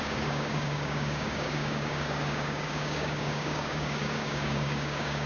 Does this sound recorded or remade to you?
remade